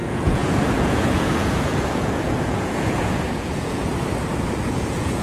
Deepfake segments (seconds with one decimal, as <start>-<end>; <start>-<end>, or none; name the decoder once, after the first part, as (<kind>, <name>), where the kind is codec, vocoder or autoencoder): 0.0-3.9 (vocoder, Vocos); 4.6-5.2